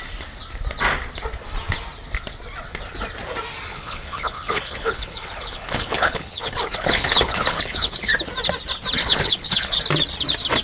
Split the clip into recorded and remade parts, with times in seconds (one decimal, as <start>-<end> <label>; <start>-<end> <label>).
0.0-3.7 recorded; 3.7-8.1 remade; 8.1-9.0 recorded; 9.0-9.8 remade; 9.8-10.6 recorded